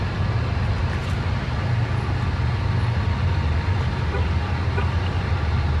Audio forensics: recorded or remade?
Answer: recorded